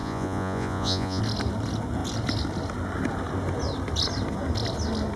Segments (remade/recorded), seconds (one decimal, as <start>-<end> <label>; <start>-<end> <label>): 0.0-1.2 remade; 1.2-5.2 recorded